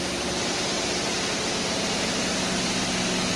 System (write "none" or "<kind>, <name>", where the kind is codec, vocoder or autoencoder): none